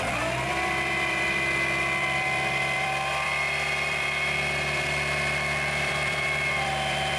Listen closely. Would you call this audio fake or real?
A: fake